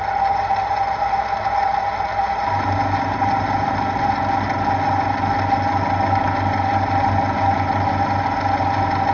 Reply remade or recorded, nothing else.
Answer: recorded